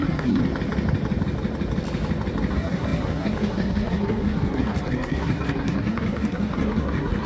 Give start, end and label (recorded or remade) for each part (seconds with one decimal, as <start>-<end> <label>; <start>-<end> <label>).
0.0-0.4 remade; 0.4-2.5 recorded; 2.5-7.3 remade